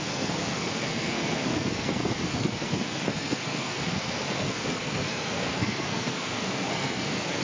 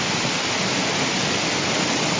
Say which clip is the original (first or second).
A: second